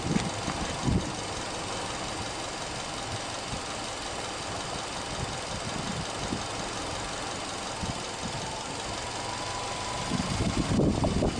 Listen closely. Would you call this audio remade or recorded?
recorded